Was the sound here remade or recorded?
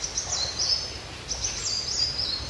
recorded